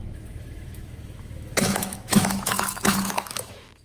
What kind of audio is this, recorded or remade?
remade